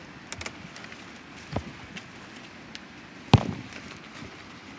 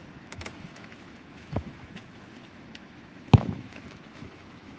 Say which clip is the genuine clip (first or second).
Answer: first